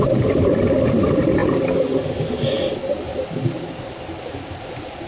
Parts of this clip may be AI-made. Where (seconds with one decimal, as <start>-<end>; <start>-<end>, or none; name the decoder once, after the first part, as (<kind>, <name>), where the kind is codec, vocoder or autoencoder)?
3.1-3.8 (vocoder, BigVGAN v2)